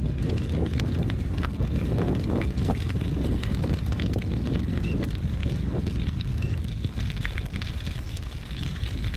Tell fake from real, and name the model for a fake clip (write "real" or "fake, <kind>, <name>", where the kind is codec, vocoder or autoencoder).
fake, codec, SNAC